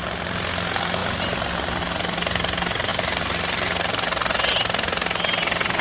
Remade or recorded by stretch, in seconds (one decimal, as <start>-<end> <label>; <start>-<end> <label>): 0.0-5.8 recorded